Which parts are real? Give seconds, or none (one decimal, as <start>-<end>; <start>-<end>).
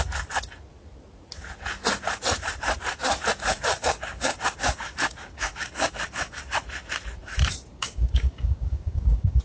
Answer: 0.0-3.5; 6.4-7.7